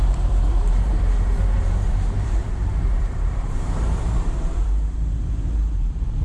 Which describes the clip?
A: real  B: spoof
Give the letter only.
B